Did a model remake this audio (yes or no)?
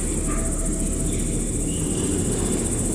no